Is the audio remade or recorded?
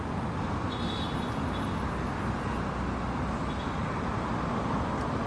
recorded